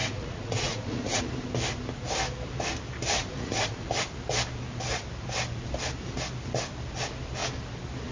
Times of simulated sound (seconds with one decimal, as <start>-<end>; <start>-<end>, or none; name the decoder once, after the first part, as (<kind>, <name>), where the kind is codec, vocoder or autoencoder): 0.0-1.2 (vocoder, Vocos); 3.2-3.9